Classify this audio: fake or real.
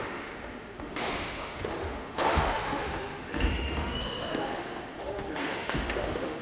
fake